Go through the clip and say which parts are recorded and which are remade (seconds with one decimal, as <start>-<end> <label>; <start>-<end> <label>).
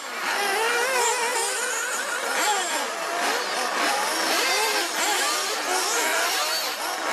0.0-7.1 recorded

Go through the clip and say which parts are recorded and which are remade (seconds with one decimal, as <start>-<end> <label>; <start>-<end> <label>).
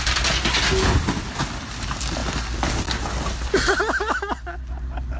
0.0-5.2 recorded